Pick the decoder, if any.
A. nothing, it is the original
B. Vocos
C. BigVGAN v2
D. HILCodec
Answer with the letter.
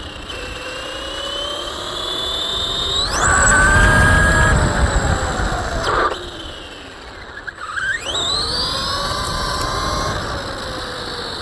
A